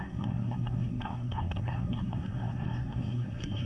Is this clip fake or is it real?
fake